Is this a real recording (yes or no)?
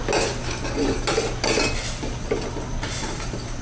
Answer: yes